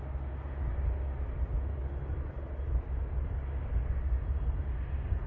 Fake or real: real